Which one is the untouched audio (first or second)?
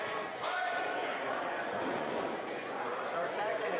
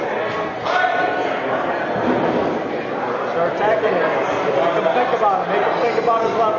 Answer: second